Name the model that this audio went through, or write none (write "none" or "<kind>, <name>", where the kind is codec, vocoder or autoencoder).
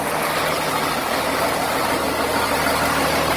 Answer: none